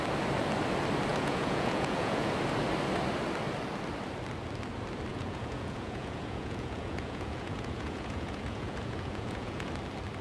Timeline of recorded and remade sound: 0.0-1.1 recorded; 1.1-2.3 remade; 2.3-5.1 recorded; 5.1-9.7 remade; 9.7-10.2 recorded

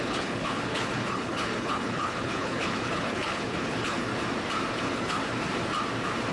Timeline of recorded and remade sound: 0.0-4.1 remade; 4.1-4.7 recorded; 4.7-5.2 remade; 5.2-6.3 recorded

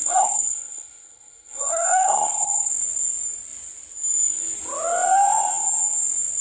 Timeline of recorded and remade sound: 0.0-2.7 remade; 2.7-6.4 recorded

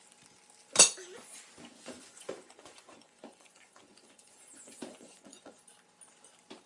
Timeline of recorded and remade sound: 0.0-1.7 recorded; 1.7-5.7 remade; 5.7-6.7 recorded

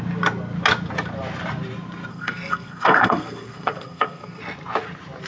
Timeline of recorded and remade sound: 0.0-2.1 recorded; 2.1-4.4 remade; 4.4-5.3 recorded

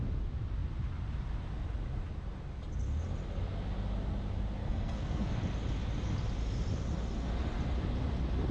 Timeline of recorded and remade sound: 0.0-4.6 recorded; 4.6-5.3 remade; 5.3-8.5 recorded

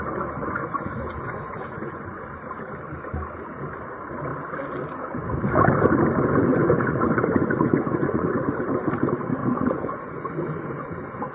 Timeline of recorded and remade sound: 0.0-0.4 recorded; 0.4-2.4 remade; 2.4-6.5 recorded; 6.5-8.4 remade; 8.4-9.4 recorded; 9.4-11.3 remade